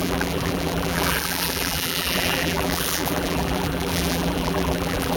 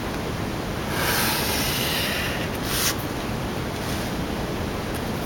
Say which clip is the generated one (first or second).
first